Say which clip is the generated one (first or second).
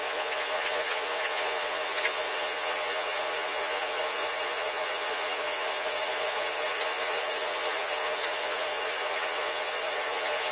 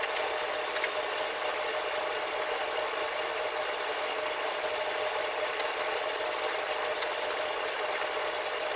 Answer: first